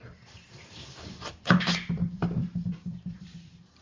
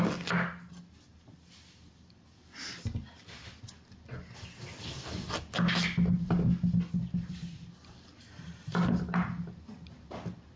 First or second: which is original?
second